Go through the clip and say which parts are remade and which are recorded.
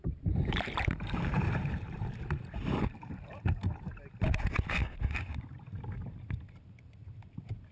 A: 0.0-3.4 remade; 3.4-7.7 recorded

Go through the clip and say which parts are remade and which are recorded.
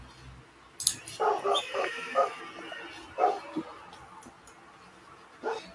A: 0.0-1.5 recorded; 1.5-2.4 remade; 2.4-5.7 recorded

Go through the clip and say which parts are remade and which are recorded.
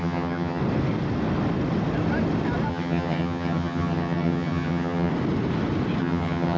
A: 0.0-0.6 remade; 0.6-2.7 recorded; 2.7-5.1 remade; 5.1-6.0 recorded; 6.0-6.6 remade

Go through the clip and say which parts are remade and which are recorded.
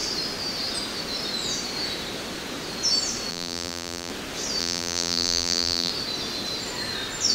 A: 0.0-3.3 recorded; 3.3-4.1 remade; 4.1-4.6 recorded; 4.6-5.9 remade; 5.9-7.3 recorded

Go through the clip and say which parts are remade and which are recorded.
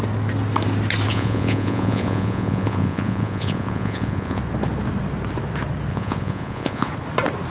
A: 0.0-1.1 recorded; 1.1-4.4 remade; 4.4-5.9 recorded; 5.9-6.9 remade; 6.9-7.5 recorded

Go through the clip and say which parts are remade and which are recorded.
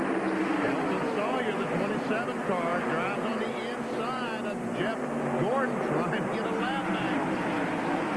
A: 0.0-8.2 recorded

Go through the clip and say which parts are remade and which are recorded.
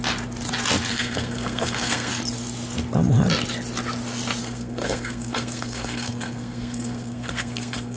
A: 0.0-0.9 recorded; 0.9-2.1 remade; 2.1-4.4 recorded; 4.4-8.0 remade